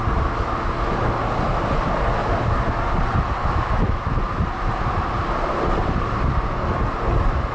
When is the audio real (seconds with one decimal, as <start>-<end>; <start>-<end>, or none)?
0.0-3.4; 4.1-7.5